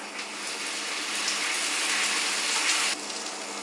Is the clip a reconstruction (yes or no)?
no